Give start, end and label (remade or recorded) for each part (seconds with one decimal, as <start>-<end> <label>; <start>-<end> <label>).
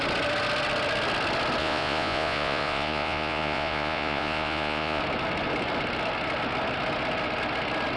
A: 0.0-1.6 recorded; 1.6-5.0 remade; 5.0-8.0 recorded